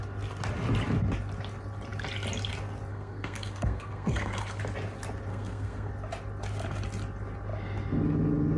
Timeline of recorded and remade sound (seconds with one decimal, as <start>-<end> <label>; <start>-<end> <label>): 0.0-2.9 recorded; 2.9-4.6 remade; 4.6-5.3 recorded; 5.3-5.9 remade; 5.9-8.6 recorded